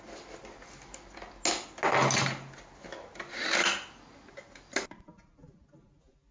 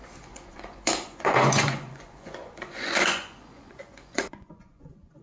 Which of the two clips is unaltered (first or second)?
first